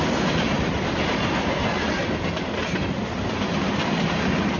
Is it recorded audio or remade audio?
recorded